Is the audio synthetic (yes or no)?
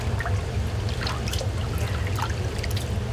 no